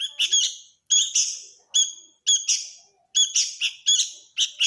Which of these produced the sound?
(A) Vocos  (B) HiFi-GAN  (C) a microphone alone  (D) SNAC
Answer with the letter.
C